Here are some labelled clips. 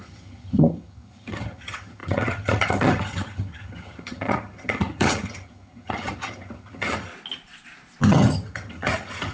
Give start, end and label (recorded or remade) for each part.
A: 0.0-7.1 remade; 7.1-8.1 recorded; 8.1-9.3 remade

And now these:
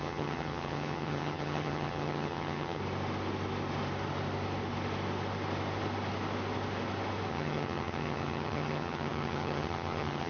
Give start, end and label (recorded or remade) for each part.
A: 0.0-2.8 remade; 2.8-7.3 recorded; 7.3-10.3 remade

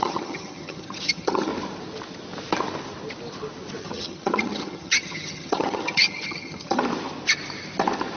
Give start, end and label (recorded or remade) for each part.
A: 0.0-1.5 remade; 1.5-3.8 recorded; 3.8-6.8 remade; 6.8-8.2 recorded

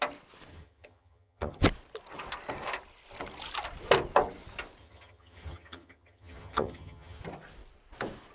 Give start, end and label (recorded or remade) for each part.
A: 0.0-0.5 recorded; 0.5-1.6 remade; 1.6-4.8 recorded; 4.8-7.2 remade; 7.2-8.3 recorded

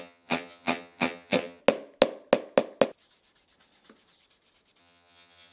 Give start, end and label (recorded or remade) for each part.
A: 0.0-1.6 remade; 1.6-4.8 recorded; 4.8-5.5 remade

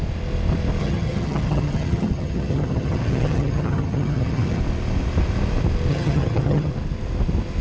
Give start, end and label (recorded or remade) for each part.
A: 0.0-0.8 recorded; 0.8-4.6 remade; 4.6-5.9 recorded; 5.9-6.7 remade; 6.7-7.6 recorded

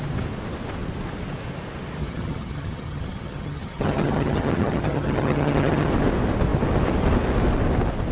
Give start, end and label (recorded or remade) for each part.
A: 0.0-2.0 recorded; 2.0-5.9 remade; 5.9-8.1 recorded